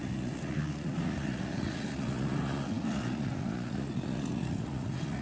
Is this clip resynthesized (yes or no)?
yes